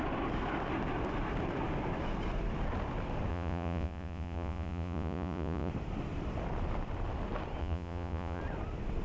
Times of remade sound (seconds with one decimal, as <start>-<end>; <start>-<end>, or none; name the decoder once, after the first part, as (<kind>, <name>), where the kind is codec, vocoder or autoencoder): 3.3-5.7 (vocoder, Vocos); 7.6-8.4